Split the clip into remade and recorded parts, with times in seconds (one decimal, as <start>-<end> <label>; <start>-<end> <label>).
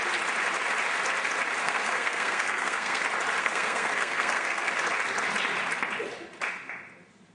0.0-1.6 recorded; 1.6-3.0 remade; 3.0-3.4 recorded; 3.4-4.7 remade; 4.7-7.3 recorded